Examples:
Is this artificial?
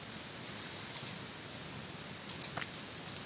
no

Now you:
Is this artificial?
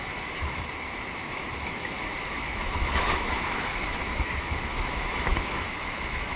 yes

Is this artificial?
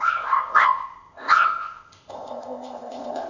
yes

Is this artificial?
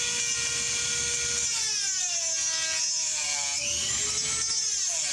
no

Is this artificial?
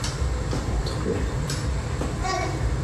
yes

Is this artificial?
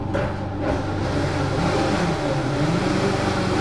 no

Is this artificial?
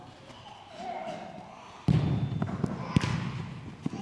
no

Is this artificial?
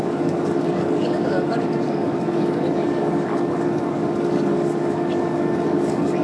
yes